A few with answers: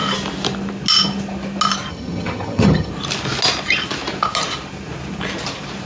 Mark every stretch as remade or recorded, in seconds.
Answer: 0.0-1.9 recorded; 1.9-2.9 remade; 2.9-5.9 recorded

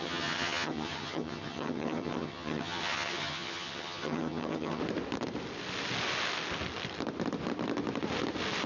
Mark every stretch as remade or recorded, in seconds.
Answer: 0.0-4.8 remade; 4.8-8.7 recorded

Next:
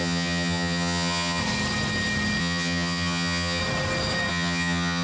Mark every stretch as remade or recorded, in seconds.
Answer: 0.0-1.4 remade; 1.4-2.4 recorded; 2.4-3.6 remade; 3.6-4.3 recorded; 4.3-5.0 remade

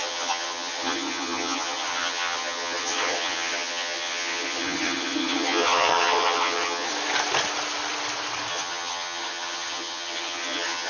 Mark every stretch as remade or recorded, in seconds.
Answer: 0.0-6.9 remade; 6.9-8.5 recorded; 8.5-10.9 remade